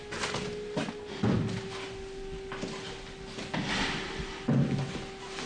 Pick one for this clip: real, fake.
real